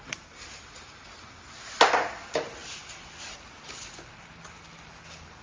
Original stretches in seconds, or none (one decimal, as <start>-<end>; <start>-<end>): 0.0-5.4